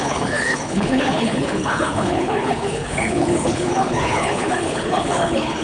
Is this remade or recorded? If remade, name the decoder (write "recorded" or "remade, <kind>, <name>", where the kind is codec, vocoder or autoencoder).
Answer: remade, codec, HILCodec